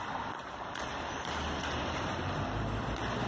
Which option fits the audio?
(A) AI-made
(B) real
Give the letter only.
B